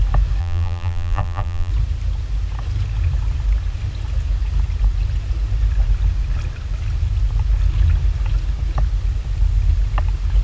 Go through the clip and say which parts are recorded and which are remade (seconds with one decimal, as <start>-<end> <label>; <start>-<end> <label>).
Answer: 0.0-0.4 recorded; 0.4-1.7 remade; 1.7-10.4 recorded